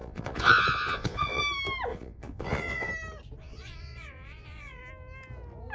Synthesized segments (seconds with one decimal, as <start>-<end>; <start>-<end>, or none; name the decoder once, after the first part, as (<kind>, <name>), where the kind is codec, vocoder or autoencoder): 0.0-1.4 (vocoder, Vocos); 1.9-2.9; 3.4-4.8